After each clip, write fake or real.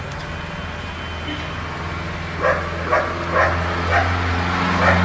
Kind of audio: real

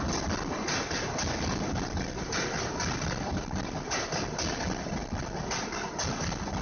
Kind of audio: real